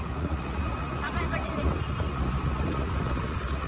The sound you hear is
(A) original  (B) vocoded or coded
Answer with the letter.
B